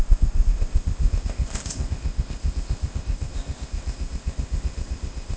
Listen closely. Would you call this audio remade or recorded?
remade